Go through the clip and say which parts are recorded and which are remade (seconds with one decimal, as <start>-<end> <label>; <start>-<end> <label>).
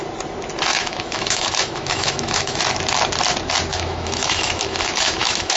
0.0-0.7 recorded; 0.7-2.6 remade; 2.6-3.7 recorded; 3.7-5.6 remade